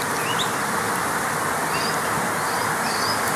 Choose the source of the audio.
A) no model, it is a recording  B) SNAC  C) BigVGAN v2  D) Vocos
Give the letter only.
A